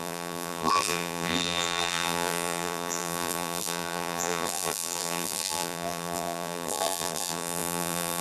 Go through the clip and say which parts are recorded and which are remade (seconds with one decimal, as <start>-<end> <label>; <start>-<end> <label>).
0.0-8.2 remade